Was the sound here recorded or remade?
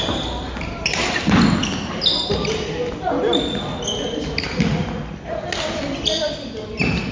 recorded